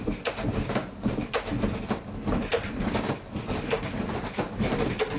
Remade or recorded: recorded